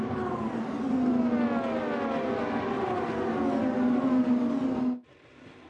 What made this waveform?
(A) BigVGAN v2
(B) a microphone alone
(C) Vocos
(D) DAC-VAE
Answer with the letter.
B